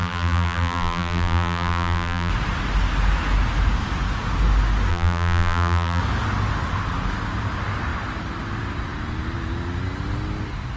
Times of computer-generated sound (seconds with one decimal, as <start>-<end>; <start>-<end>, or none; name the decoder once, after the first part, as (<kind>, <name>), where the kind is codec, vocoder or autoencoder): 0.0-2.3 (vocoder, BigVGAN v2); 4.9-6.0